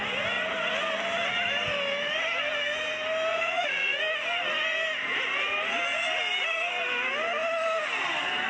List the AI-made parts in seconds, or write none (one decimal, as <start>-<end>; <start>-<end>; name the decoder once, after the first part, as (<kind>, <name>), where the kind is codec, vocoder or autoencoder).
3.3-4.0 (vocoder, Vocos)